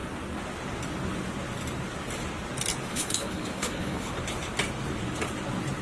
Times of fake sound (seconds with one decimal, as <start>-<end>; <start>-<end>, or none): 2.9-4.1